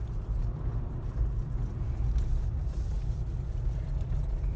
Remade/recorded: remade